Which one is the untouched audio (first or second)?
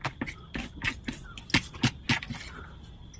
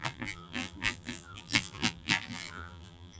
first